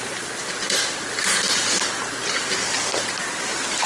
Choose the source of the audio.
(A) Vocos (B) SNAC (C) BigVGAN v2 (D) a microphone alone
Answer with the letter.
D